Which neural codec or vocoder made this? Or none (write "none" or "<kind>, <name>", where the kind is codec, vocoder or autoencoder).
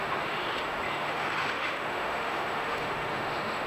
autoencoder, DAC-VAE